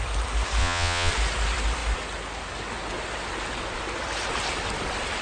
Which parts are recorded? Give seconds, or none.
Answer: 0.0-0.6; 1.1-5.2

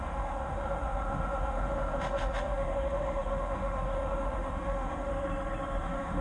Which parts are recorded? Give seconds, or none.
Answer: 5.1-5.8

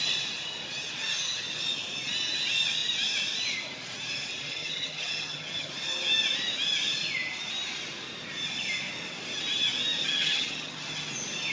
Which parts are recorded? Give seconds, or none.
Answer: 0.0-4.5; 5.7-10.0; 11.1-11.5

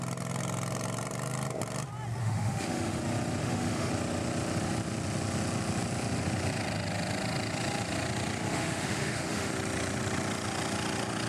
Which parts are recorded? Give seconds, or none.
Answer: 0.0-2.2; 3.0-3.4; 3.9-8.5; 9.5-11.3

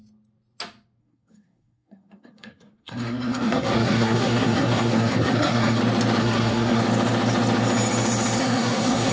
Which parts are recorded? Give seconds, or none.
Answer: 0.0-1.0; 5.8-6.2; 6.8-8.4